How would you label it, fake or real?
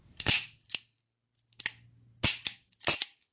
real